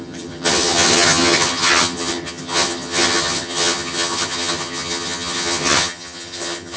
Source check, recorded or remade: remade